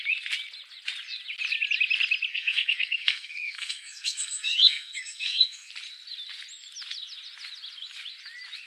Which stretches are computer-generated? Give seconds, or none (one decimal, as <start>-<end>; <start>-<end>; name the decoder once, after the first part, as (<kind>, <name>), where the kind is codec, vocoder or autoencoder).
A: 2.3-5.7 (codec, SNAC)